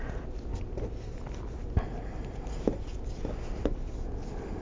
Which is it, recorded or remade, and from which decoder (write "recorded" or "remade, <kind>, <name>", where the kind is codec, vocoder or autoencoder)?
recorded